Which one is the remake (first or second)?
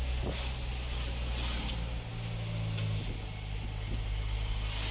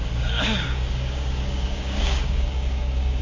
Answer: second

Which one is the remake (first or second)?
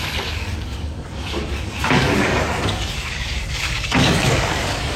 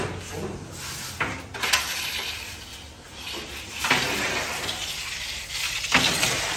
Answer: first